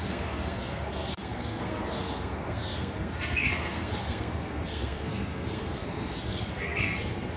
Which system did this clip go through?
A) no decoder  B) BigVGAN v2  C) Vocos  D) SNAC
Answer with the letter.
D